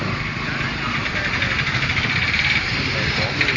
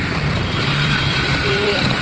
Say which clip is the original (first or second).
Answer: first